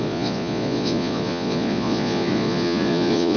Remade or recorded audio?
remade